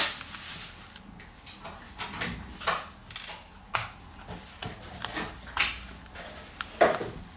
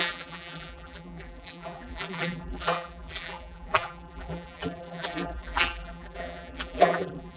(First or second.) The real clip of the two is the first